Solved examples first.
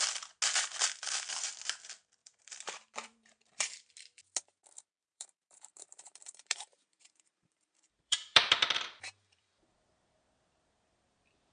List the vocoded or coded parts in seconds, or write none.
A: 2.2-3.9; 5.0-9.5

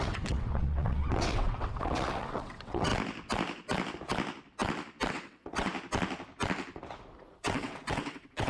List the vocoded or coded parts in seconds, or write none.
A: 0.0-2.9; 5.1-5.7; 7.3-8.5

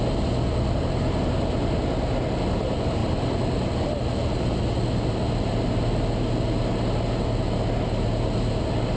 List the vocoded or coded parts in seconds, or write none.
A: none

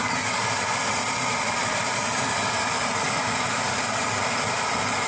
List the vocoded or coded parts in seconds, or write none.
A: none

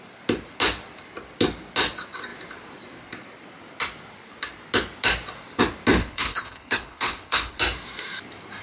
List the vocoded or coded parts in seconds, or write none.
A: 6.0-7.6

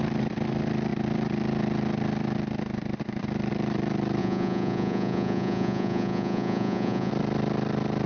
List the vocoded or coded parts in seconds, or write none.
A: 4.2-7.1